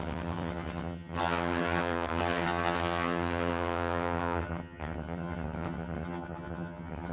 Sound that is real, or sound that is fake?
fake